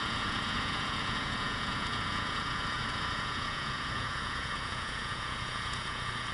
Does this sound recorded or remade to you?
remade